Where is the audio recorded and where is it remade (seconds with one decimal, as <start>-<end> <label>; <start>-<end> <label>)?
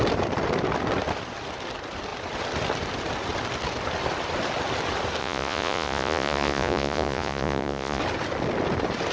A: 0.0-5.2 recorded; 5.2-8.0 remade; 8.0-9.1 recorded